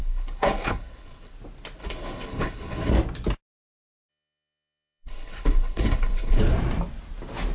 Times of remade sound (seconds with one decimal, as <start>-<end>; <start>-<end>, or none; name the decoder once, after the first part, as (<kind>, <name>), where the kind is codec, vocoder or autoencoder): 0.0-1.3 (codec, HILCodec); 1.8-2.9; 4.1-6.4